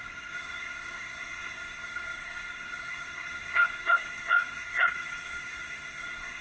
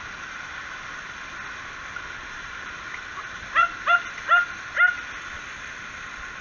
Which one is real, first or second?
second